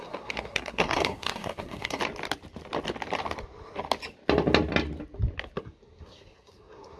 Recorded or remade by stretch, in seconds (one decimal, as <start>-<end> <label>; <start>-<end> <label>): 0.0-2.0 remade; 2.0-5.6 recorded; 5.6-7.0 remade